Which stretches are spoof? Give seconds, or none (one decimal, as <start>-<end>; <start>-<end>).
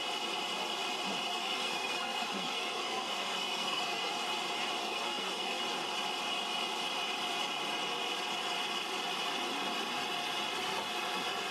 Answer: 1.3-4.1; 4.8-5.6